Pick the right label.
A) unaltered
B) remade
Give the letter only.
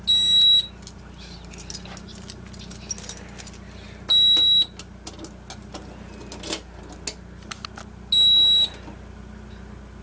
A